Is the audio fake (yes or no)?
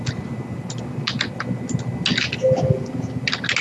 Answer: no